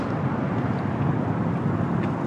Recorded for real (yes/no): yes